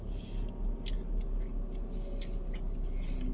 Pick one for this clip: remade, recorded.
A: recorded